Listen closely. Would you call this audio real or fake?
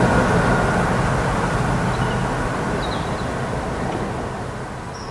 real